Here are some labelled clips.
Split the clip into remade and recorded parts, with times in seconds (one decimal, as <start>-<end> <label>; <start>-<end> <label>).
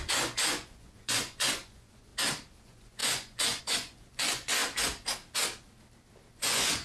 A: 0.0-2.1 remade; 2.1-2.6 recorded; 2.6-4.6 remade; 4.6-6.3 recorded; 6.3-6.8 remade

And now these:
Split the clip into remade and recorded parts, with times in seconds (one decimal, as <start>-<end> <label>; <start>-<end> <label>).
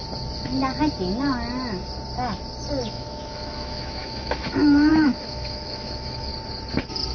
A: 0.0-2.8 recorded; 2.8-6.3 remade; 6.3-7.1 recorded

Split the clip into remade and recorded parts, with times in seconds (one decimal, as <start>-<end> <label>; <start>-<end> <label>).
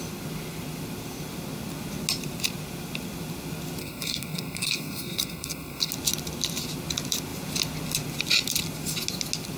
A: 0.0-3.8 recorded; 3.8-5.9 remade; 5.9-9.6 recorded